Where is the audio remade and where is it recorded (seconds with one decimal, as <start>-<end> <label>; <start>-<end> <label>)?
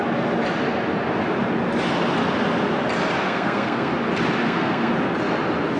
0.0-3.2 recorded; 3.2-3.9 remade; 3.9-4.4 recorded; 4.4-4.9 remade; 4.9-5.8 recorded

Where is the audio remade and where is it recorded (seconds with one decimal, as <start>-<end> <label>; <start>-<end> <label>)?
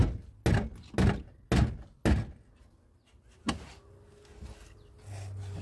0.0-5.6 recorded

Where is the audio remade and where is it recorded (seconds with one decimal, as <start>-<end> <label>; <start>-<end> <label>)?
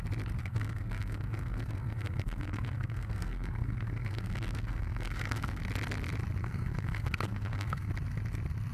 0.0-0.4 recorded; 0.4-5.6 remade; 5.6-6.4 recorded; 6.4-7.9 remade; 7.9-8.7 recorded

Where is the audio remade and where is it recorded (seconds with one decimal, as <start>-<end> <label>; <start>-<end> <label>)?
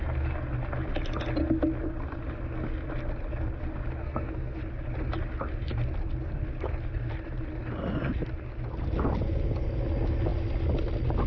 0.0-4.0 recorded; 4.0-4.6 remade; 4.6-11.3 recorded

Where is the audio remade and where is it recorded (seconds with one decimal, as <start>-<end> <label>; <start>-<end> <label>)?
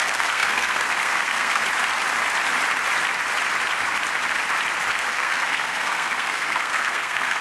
0.0-1.6 remade; 1.6-4.9 recorded; 4.9-7.4 remade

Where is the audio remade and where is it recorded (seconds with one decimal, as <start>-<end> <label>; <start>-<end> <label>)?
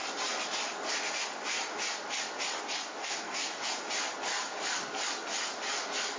0.0-3.0 recorded; 3.0-3.5 remade; 3.5-6.2 recorded